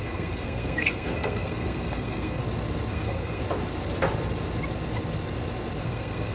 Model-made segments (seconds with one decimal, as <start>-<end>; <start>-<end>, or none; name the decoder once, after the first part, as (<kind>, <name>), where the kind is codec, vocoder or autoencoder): 0.0-2.4 (codec, SNAC); 2.9-3.4; 5.8-6.3

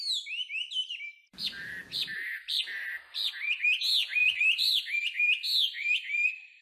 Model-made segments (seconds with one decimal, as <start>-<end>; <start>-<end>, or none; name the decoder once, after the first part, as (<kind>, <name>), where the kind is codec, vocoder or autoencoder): 1.2-1.8 (vocoder, BigVGAN v2); 4.2-4.8; 5.8-6.6

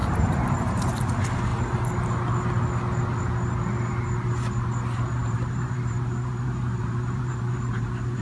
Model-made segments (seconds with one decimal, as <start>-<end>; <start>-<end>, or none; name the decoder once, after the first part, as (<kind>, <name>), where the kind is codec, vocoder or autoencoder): 0.0-0.9 (vocoder, BigVGAN v2); 5.2-8.2